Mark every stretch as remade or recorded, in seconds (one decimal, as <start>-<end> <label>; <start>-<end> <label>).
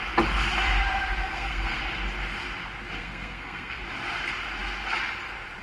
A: 0.0-1.2 recorded; 1.2-1.8 remade; 1.8-3.0 recorded; 3.0-3.8 remade; 3.8-5.6 recorded